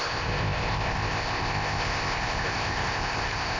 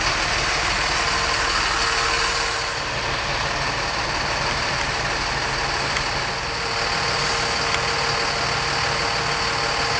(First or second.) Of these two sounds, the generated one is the first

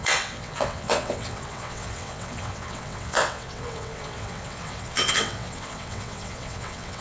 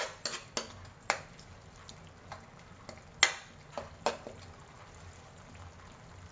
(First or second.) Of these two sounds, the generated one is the first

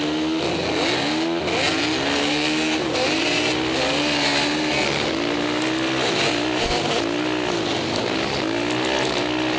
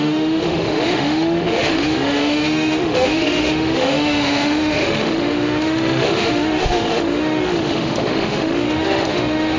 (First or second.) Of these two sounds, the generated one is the second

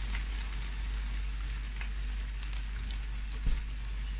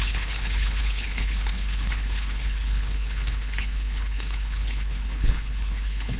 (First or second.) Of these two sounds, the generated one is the second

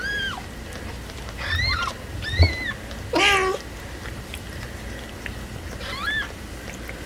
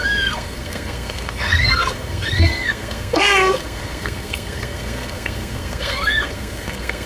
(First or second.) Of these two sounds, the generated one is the second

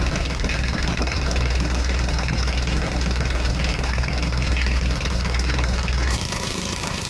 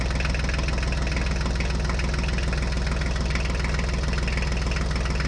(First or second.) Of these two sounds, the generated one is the first